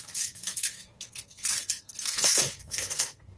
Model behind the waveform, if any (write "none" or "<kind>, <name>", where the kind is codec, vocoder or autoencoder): codec, SNAC